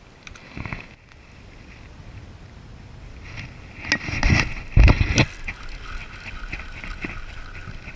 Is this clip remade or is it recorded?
recorded